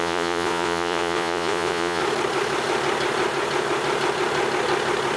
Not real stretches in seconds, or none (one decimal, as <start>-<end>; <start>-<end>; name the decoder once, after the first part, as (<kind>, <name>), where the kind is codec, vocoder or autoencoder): 0.0-2.0 (vocoder, Vocos)